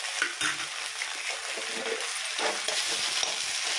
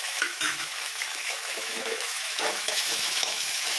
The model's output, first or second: second